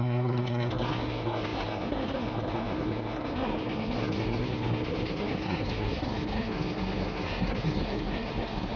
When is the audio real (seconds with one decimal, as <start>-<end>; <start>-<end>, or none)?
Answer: none